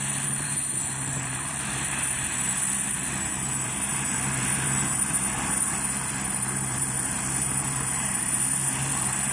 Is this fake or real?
fake